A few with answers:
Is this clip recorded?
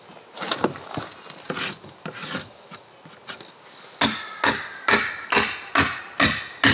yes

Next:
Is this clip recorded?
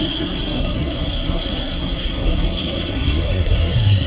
no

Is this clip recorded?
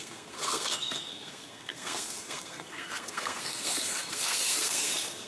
no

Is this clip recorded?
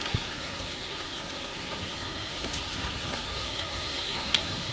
no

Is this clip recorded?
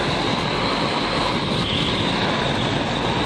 yes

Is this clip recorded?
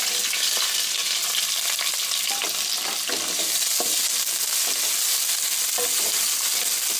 yes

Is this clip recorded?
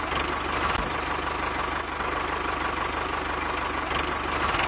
yes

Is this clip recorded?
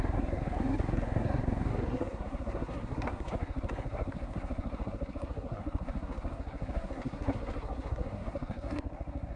no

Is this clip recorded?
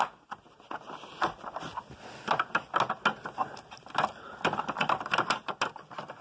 yes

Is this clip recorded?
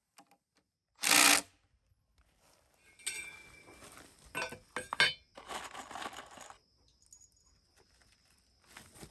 yes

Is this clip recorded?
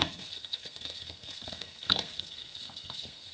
no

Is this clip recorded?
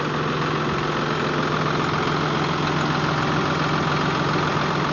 yes